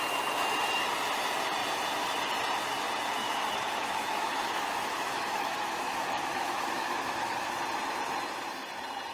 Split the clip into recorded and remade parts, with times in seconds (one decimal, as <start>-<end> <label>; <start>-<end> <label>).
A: 0.0-3.2 recorded; 3.2-7.5 remade; 7.5-9.1 recorded